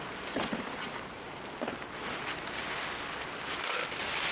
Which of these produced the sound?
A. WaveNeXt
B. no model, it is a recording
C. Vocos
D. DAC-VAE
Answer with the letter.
B